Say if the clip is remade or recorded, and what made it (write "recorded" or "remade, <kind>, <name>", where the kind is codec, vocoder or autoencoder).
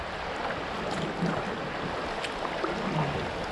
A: recorded